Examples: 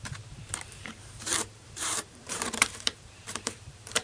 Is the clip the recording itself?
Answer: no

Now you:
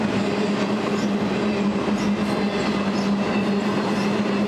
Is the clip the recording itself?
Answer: yes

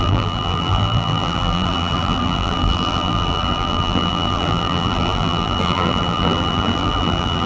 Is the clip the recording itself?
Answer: no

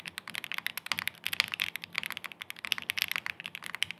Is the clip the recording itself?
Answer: yes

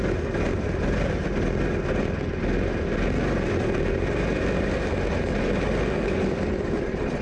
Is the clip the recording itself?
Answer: yes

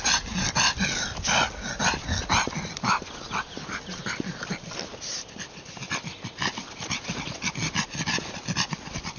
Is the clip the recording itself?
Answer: yes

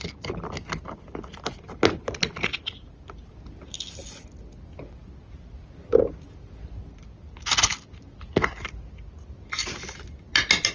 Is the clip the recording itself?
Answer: yes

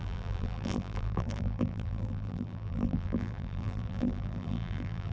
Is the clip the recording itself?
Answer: no